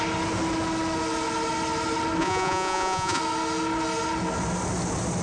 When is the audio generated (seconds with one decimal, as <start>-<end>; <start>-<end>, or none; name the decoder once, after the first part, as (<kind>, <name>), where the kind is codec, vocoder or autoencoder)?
2.2-3.2 (vocoder, Vocos)